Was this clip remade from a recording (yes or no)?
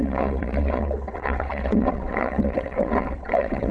yes